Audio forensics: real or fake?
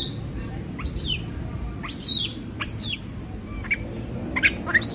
real